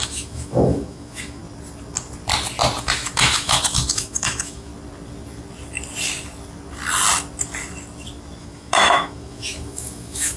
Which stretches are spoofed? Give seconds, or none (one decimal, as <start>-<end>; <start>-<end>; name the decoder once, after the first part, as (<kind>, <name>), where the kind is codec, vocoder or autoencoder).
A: 0.0-1.4 (autoencoder, DAC-VAE); 2.8-4.7; 8.4-10.4